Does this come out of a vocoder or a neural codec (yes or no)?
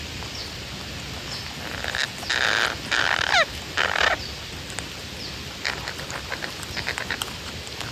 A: no